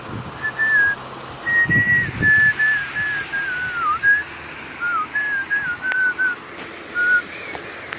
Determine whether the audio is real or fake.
real